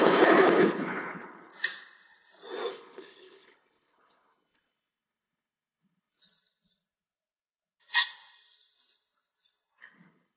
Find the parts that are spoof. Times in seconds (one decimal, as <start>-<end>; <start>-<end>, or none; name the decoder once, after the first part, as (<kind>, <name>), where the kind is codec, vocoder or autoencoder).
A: 0.0-1.5 (codec, HILCodec); 2.7-6.2; 9.8-10.4